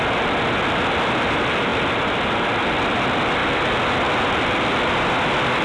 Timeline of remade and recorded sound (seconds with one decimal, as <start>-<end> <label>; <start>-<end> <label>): 0.0-5.6 recorded